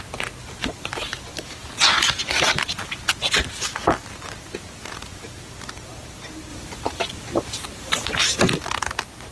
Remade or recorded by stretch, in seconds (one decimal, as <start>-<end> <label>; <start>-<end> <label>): 0.0-0.6 recorded; 0.6-1.4 remade; 1.4-1.9 recorded; 1.9-2.5 remade; 2.5-6.5 recorded; 6.5-8.4 remade; 8.4-9.3 recorded